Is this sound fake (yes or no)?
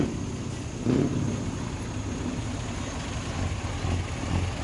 no